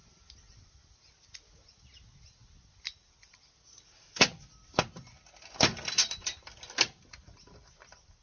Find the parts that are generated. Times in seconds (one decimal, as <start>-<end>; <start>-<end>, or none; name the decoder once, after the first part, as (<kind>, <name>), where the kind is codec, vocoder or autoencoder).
none